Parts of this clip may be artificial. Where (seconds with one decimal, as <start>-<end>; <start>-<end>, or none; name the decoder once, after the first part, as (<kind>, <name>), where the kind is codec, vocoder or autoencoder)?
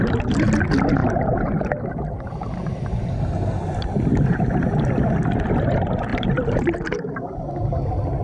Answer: 1.0-3.1 (vocoder, BigVGAN v2); 6.1-7.7